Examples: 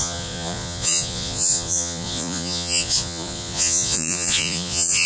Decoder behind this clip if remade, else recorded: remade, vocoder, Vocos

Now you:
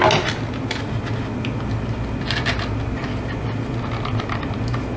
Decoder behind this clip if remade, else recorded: recorded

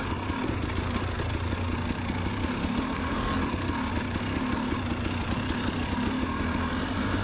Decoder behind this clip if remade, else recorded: recorded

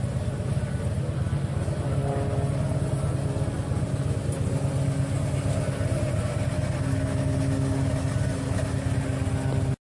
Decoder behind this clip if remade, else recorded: recorded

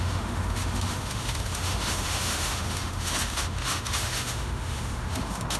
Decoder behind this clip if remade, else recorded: remade, autoencoder, DAC-VAE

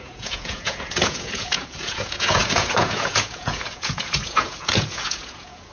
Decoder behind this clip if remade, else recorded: remade, vocoder, Vocos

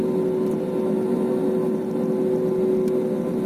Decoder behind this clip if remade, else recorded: recorded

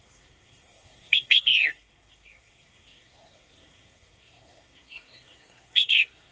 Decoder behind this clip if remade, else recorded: remade, codec, SNAC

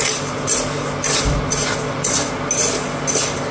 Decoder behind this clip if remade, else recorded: recorded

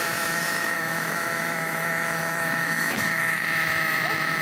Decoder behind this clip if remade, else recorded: remade, autoencoder, DAC-VAE